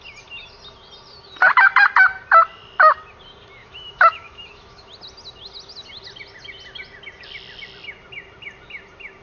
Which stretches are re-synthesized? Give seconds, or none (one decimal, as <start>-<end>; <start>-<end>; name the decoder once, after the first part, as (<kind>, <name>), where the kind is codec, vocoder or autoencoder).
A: 3.6-4.9 (autoencoder, DAC-VAE)

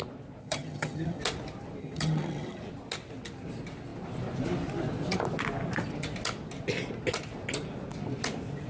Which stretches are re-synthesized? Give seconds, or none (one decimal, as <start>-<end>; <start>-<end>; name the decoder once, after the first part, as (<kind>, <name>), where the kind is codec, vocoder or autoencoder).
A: 0.4-1.2 (vocoder, HiFi-GAN); 1.8-2.6

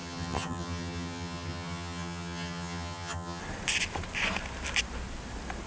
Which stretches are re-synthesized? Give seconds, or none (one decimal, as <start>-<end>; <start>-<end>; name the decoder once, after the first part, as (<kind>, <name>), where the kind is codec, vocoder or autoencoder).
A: 0.0-3.4 (vocoder, HiFi-GAN)

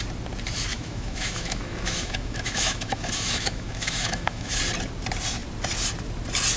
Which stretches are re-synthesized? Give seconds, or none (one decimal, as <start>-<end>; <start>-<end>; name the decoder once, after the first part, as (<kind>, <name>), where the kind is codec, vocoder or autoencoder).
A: 0.7-4.6 (autoencoder, DAC-VAE)

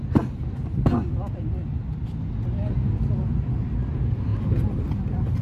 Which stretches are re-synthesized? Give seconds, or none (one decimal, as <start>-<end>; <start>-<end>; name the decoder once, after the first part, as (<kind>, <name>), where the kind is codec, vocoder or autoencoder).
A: none

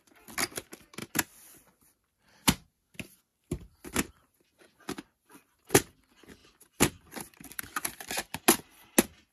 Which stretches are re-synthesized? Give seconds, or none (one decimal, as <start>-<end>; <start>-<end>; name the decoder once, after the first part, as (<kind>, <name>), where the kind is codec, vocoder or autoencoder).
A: 1.0-2.7 (vocoder, BigVGAN v2); 3.3-4.1; 6.4-7.6

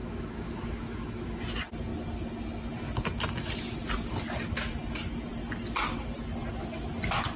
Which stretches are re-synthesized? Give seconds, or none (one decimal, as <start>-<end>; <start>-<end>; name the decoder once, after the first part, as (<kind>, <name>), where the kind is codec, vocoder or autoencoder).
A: 0.0-1.4 (autoencoder, DAC-VAE)

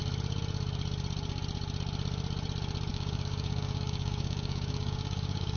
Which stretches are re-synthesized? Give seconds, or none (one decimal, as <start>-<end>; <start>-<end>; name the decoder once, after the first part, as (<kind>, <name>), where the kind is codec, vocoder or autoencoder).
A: 2.9-5.6 (codec, DAC)